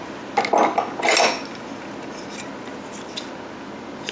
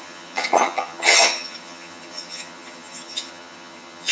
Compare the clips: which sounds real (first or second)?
first